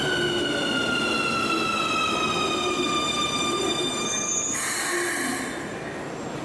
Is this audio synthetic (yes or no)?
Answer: no